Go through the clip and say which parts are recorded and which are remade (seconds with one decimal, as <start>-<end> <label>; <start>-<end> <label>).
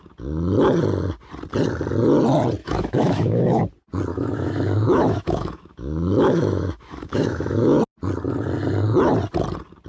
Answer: 0.0-2.6 recorded; 2.6-3.6 remade; 3.6-4.1 recorded; 4.1-7.8 remade; 7.8-9.9 recorded